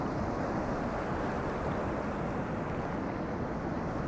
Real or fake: real